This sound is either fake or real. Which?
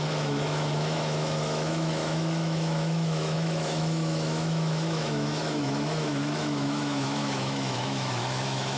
fake